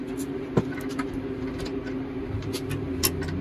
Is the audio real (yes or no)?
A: yes